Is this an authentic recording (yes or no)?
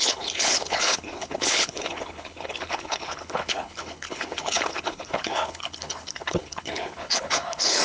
no